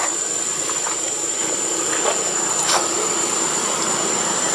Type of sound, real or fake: real